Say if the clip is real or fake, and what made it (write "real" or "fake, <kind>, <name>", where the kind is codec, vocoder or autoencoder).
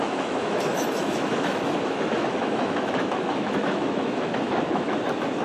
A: fake, autoencoder, DAC-VAE